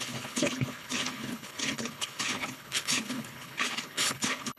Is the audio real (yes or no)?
no